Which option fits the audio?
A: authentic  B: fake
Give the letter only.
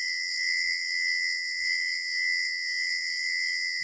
B